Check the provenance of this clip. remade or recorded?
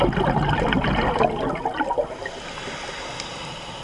recorded